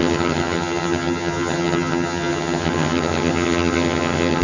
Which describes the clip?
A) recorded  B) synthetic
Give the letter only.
B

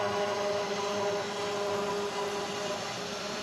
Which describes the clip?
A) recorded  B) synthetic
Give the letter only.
A